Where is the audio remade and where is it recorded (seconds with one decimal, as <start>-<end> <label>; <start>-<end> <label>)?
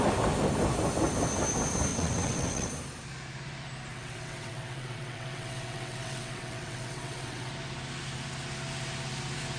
0.0-1.9 recorded; 1.9-2.7 remade; 2.7-3.9 recorded; 3.9-7.5 remade; 7.5-9.6 recorded